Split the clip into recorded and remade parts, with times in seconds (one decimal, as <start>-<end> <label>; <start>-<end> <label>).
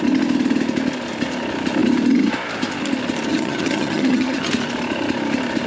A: 0.0-3.3 recorded; 3.3-4.5 remade; 4.5-5.7 recorded